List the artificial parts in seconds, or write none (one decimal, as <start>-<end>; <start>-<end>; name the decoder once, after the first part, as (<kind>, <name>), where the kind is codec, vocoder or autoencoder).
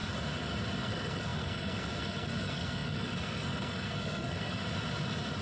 0.8-4.6 (codec, SNAC)